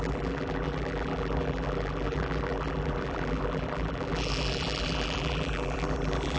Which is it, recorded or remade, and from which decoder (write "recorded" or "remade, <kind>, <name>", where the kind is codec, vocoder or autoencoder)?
remade, vocoder, BigVGAN v2